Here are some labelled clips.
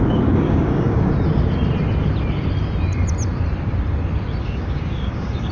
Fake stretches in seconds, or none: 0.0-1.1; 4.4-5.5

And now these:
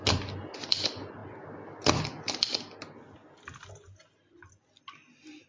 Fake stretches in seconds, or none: none